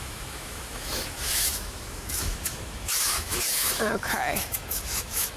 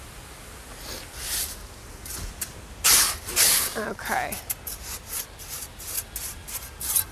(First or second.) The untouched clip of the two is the second